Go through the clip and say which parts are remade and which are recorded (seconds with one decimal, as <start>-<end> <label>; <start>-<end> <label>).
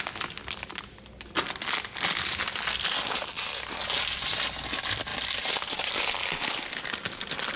0.0-7.6 recorded